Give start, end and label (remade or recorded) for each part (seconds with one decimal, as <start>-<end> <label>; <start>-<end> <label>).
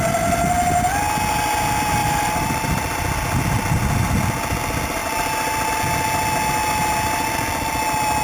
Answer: 0.0-2.0 recorded; 2.0-3.7 remade; 3.7-8.2 recorded